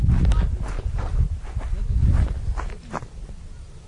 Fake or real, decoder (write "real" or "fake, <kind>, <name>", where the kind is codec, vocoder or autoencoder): real